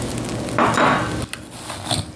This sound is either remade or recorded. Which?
recorded